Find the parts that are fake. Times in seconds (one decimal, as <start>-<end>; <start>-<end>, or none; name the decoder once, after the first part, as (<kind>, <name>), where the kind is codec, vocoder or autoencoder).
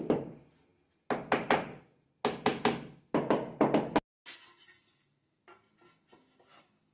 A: none